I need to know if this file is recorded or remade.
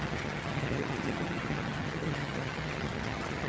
remade